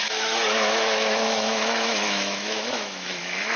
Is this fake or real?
fake